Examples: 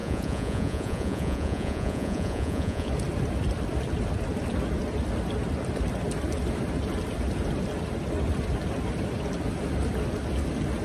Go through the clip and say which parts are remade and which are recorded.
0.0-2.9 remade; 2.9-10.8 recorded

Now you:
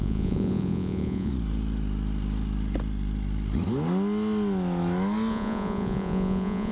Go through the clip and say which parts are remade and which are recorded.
0.0-1.3 remade; 1.3-5.3 recorded; 5.3-6.7 remade

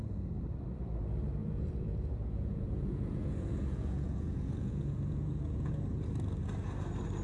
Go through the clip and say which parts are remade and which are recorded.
0.0-1.4 recorded; 1.4-5.7 remade; 5.7-7.2 recorded